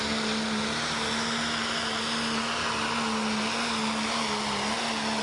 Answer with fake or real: real